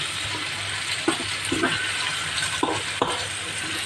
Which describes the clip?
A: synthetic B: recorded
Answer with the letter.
B